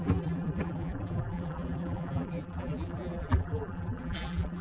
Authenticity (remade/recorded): remade